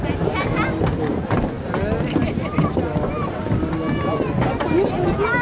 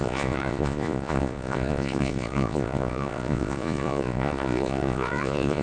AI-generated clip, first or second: second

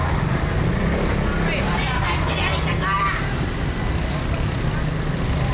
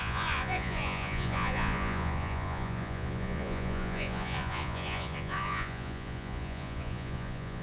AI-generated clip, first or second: second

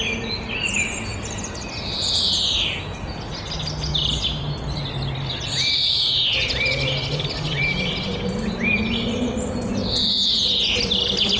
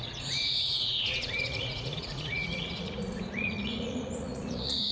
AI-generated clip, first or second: second